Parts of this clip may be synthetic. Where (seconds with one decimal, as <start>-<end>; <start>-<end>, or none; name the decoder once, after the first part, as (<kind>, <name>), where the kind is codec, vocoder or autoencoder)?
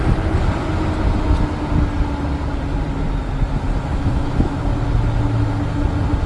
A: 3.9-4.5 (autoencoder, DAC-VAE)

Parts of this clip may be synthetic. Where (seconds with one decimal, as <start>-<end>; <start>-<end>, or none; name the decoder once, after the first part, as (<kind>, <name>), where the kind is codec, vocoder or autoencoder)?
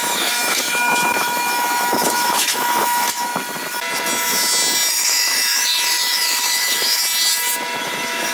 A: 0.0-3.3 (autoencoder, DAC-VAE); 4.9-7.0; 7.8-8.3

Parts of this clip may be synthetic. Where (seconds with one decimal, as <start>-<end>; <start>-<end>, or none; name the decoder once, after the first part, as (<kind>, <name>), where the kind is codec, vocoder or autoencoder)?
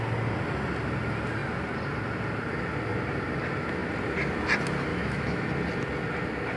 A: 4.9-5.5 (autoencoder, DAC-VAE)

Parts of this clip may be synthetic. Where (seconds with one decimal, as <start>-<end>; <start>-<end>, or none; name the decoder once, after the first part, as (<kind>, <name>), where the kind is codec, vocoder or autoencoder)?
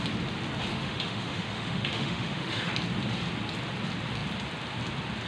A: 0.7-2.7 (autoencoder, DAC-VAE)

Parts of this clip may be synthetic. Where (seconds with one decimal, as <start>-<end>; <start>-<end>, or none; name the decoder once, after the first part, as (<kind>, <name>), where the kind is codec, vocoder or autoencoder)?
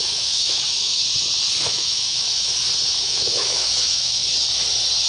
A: 0.0-1.0 (autoencoder, DAC-VAE); 1.6-2.5; 3.0-4.2